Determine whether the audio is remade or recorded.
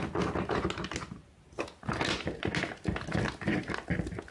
recorded